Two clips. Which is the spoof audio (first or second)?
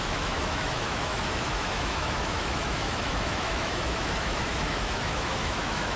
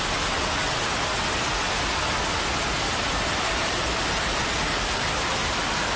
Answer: first